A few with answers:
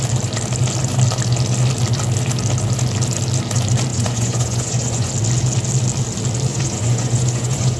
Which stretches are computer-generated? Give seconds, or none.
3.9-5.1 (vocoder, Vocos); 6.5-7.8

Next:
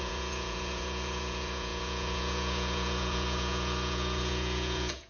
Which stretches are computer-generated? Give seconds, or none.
0.0-5.1 (vocoder, Vocos)